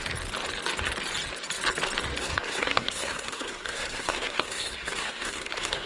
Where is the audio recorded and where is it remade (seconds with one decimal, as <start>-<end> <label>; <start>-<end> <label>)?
0.0-2.2 recorded; 2.2-5.9 remade